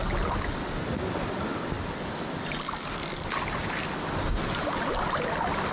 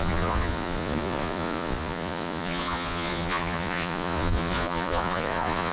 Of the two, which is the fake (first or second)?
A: second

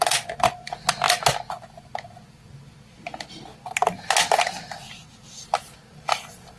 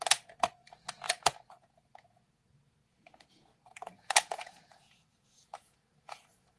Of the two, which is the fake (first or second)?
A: second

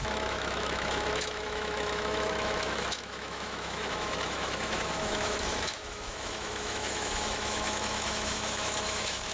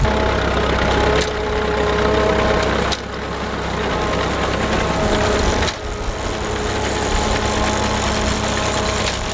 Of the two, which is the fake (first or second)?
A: first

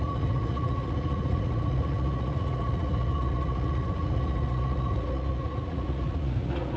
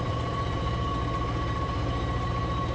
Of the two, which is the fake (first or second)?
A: first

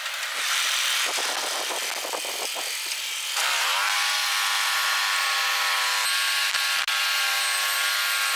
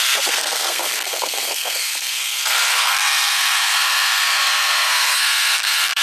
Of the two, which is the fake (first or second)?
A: second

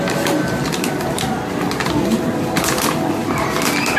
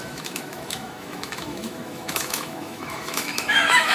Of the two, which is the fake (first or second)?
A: second